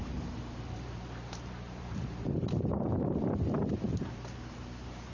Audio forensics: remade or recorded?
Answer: remade